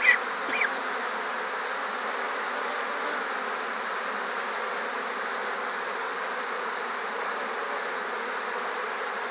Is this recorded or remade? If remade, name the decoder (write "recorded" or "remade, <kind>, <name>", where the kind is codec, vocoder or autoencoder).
recorded